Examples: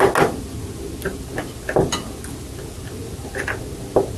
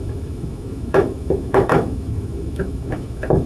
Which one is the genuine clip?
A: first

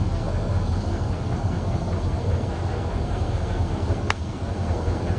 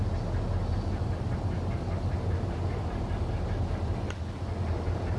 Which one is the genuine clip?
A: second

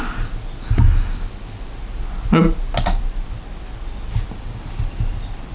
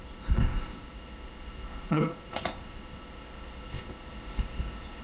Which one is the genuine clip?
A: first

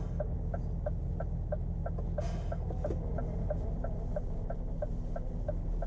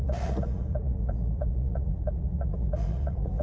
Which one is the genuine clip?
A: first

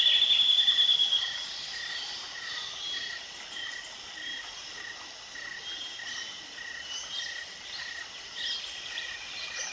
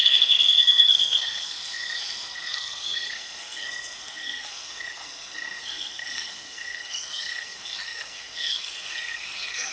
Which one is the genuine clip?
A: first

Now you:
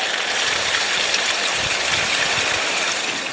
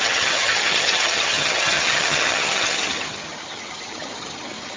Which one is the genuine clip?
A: first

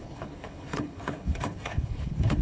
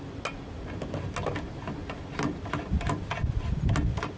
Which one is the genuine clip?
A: second